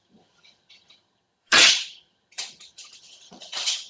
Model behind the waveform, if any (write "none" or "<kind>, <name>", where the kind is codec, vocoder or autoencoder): vocoder, HiFi-GAN